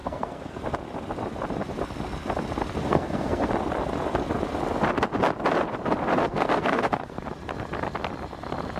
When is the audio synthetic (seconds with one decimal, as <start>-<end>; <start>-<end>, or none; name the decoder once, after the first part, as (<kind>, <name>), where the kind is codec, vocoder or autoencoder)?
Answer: 0.0-0.6 (codec, SNAC); 2.8-3.5; 6.2-7.2